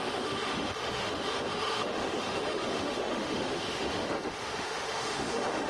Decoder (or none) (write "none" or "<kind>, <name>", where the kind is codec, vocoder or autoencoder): autoencoder, DAC-VAE